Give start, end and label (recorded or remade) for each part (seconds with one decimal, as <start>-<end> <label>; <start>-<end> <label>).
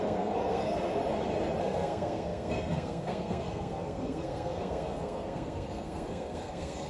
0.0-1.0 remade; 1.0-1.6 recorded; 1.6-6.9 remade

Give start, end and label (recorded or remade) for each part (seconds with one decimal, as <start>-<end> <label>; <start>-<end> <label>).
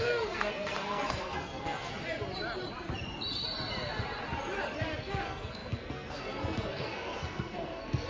0.0-1.9 remade; 1.9-5.0 recorded; 5.0-8.1 remade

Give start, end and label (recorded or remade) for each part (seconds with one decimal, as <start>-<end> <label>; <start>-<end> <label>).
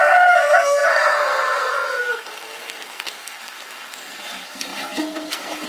0.0-5.7 remade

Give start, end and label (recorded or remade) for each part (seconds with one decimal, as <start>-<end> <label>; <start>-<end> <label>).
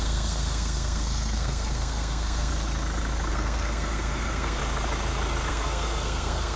0.0-2.5 remade; 2.5-3.3 recorded; 3.3-4.6 remade; 4.6-5.5 recorded; 5.5-6.6 remade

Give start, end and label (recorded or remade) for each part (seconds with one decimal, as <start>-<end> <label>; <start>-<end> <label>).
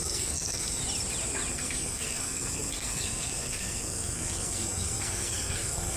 0.0-0.8 remade; 0.8-1.5 recorded; 1.5-6.0 remade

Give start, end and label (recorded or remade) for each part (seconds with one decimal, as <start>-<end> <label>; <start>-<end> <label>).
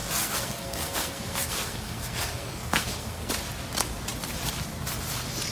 0.0-3.3 remade; 3.3-5.5 recorded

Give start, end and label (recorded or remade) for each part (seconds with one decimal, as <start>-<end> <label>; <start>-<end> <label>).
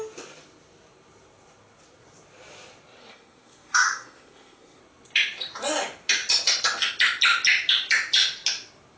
0.0-3.0 recorded; 3.0-4.8 remade; 4.8-9.0 recorded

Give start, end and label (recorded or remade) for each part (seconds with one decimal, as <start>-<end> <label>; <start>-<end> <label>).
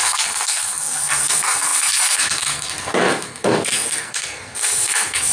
0.0-5.3 remade